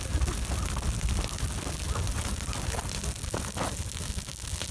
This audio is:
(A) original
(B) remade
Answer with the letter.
A